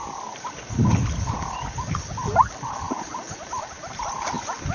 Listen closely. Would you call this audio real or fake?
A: real